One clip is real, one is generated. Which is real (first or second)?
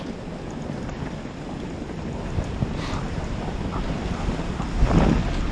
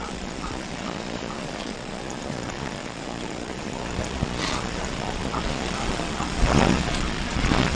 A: first